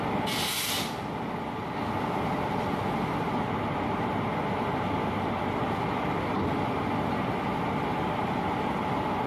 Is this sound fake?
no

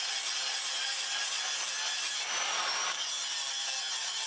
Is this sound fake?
no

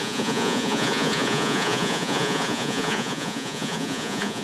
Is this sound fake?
yes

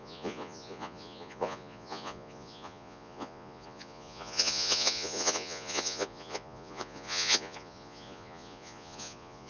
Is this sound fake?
yes